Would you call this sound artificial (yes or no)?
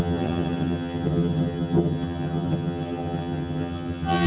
yes